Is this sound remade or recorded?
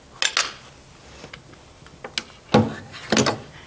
recorded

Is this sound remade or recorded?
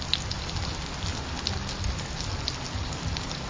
recorded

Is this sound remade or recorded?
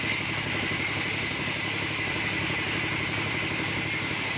recorded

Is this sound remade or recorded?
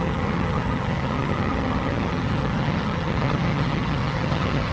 remade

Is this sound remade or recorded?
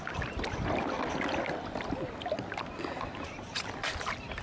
recorded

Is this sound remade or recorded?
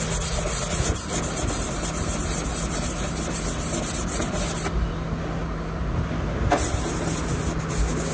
recorded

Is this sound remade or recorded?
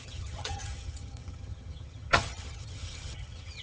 remade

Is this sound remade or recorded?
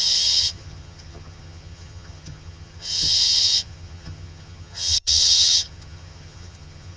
remade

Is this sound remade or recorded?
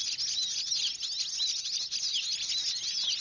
recorded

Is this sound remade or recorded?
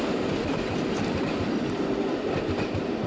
recorded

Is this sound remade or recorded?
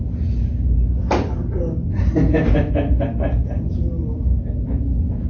recorded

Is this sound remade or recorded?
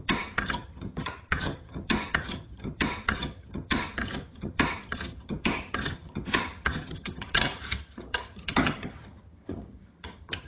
remade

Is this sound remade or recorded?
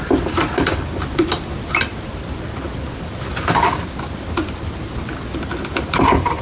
recorded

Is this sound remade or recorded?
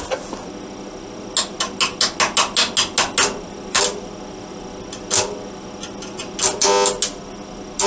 recorded